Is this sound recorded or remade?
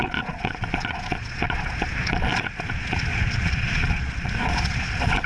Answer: remade